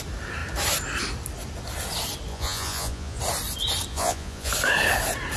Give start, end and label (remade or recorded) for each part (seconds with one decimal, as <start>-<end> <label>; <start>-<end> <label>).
0.0-2.3 recorded; 2.3-3.2 remade; 3.2-3.9 recorded; 3.9-4.5 remade; 4.5-5.4 recorded